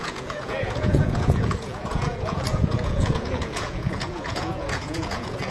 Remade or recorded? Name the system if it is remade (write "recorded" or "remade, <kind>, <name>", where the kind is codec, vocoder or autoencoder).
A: remade, vocoder, Vocos